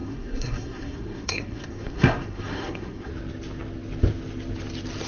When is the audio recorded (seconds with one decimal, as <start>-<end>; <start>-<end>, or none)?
3.1-5.1